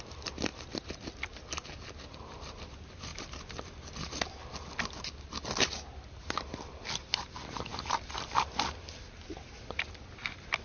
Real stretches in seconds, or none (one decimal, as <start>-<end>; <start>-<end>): 0.0-10.6